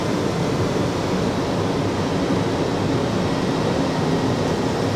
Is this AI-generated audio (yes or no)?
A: no